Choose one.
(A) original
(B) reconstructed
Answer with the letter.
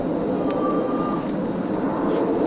A